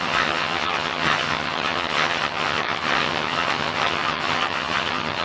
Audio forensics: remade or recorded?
remade